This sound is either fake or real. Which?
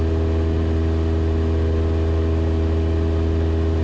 real